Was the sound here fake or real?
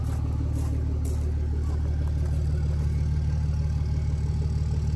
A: real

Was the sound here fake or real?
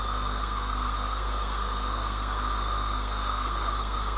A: fake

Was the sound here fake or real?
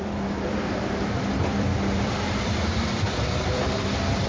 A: fake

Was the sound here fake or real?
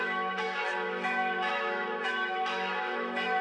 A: fake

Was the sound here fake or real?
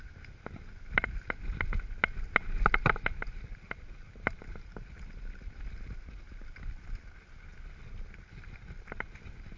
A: real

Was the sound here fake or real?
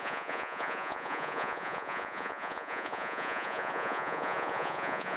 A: fake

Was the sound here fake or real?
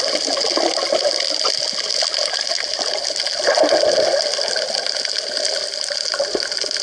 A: real